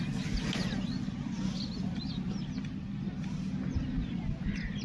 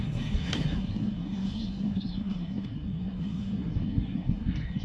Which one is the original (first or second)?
first